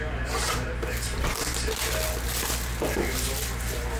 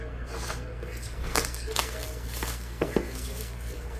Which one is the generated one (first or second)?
second